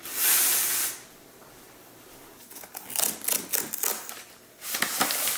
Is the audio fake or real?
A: real